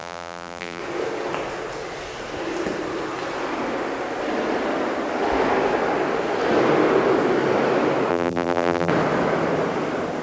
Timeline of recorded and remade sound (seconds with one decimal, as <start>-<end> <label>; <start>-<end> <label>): 0.0-0.8 remade; 0.8-8.1 recorded; 8.1-8.9 remade; 8.9-10.2 recorded